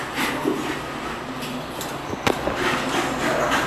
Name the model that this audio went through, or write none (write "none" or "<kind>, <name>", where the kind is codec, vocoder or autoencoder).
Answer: none